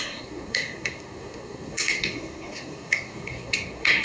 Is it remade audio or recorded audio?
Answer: remade